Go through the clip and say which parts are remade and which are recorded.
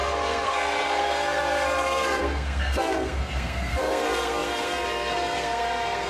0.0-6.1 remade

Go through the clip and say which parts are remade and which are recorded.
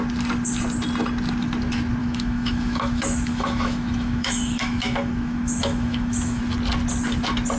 0.0-2.0 recorded; 2.0-6.4 remade; 6.4-7.6 recorded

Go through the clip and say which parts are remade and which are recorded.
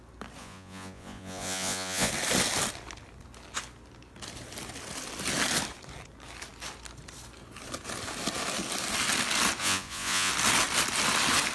0.0-0.4 recorded; 0.4-2.1 remade; 2.1-9.6 recorded; 9.6-10.3 remade; 10.3-11.5 recorded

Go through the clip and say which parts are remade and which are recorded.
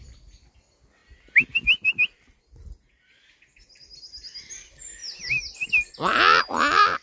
0.0-7.0 recorded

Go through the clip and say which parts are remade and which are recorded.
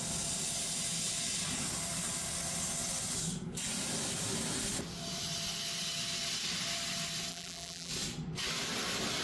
0.0-7.3 recorded; 7.3-7.9 remade; 7.9-9.2 recorded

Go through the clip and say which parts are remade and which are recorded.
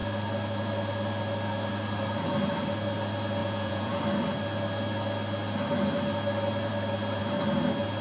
0.0-3.4 recorded; 3.4-4.0 remade; 4.0-8.0 recorded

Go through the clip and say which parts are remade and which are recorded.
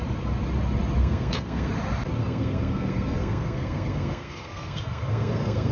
0.0-1.0 recorded; 1.0-1.7 remade; 1.7-2.2 recorded; 2.2-5.7 remade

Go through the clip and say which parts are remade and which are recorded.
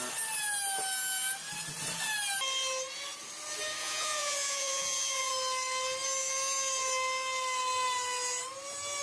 0.0-3.8 recorded; 3.8-5.3 remade; 5.3-9.0 recorded